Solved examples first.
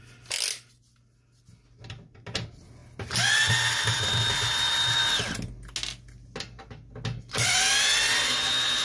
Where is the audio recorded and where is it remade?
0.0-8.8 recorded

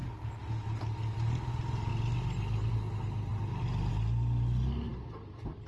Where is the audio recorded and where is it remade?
0.0-5.7 recorded

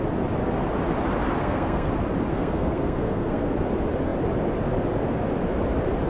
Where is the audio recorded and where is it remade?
0.0-1.4 recorded; 1.4-1.9 remade; 1.9-2.3 recorded; 2.3-3.5 remade; 3.5-6.1 recorded

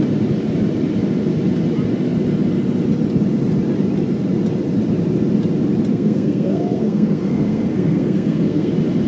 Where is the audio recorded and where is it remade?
0.0-5.9 recorded; 5.9-8.7 remade; 8.7-9.1 recorded

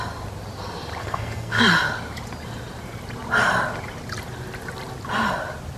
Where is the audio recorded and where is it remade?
0.0-1.0 recorded; 1.0-1.6 remade; 1.6-5.8 recorded

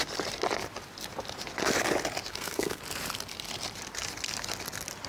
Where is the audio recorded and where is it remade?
0.0-2.3 recorded; 2.3-2.8 remade; 2.8-5.1 recorded